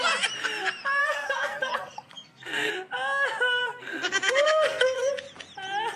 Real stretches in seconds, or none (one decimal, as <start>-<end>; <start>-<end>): 0.0-1.0; 2.7-3.6; 5.1-6.0